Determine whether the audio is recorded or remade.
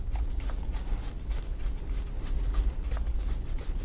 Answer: recorded